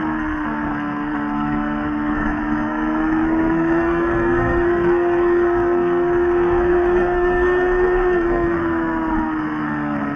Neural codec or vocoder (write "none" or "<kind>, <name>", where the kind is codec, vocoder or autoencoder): codec, SNAC